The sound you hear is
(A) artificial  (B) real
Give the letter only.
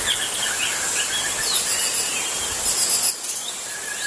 B